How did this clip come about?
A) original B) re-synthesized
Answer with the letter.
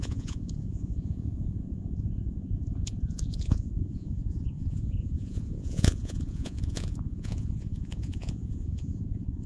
B